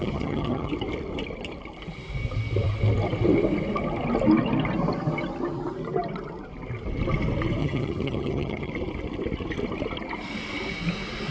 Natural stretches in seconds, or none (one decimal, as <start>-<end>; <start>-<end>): 0.7-7.6; 8.7-11.3